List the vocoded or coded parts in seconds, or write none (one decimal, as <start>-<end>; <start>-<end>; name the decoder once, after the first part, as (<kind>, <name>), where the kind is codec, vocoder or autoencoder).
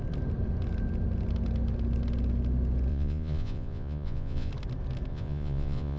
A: 2.9-4.5 (vocoder, Vocos); 5.1-6.0